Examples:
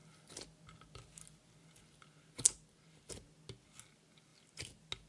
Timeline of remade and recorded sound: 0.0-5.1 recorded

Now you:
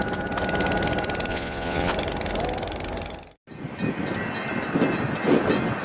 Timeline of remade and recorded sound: 0.0-1.3 recorded; 1.3-1.9 remade; 1.9-5.8 recorded

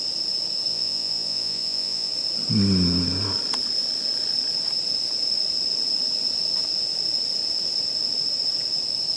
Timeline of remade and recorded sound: 0.0-0.7 recorded; 0.7-2.1 remade; 2.1-9.2 recorded

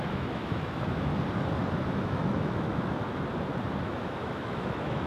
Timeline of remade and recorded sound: 0.0-1.1 remade; 1.1-2.0 recorded; 2.0-3.0 remade; 3.0-3.8 recorded; 3.8-5.1 remade

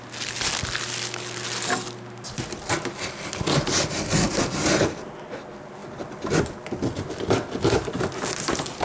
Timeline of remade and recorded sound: 0.0-8.8 recorded